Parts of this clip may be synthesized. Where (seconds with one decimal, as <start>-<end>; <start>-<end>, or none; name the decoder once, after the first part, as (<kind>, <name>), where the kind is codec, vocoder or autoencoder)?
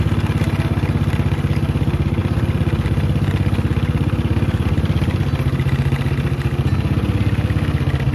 none